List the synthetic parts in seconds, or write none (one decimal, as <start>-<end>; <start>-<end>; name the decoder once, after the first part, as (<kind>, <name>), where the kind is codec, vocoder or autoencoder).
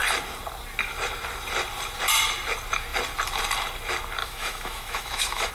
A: 4.2-5.5 (autoencoder, DAC-VAE)